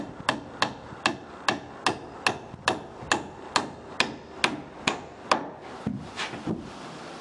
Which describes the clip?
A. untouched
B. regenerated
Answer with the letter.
A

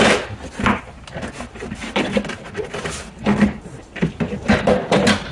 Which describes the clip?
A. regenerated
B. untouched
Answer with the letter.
B